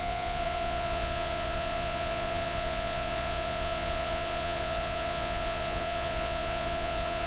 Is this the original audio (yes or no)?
no